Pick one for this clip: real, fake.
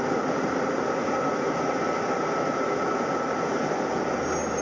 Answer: real